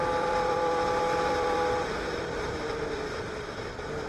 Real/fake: fake